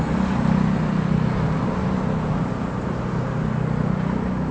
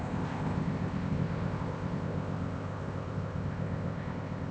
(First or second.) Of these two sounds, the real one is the first